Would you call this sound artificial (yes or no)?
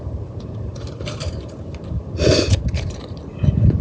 yes